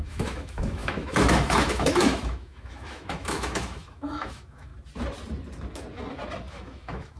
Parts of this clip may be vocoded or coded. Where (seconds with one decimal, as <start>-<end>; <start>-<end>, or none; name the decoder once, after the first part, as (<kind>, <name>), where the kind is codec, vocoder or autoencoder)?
0.0-4.7 (autoencoder, DAC-VAE); 6.5-7.2